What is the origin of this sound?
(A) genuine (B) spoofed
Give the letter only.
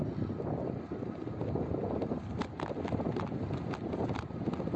A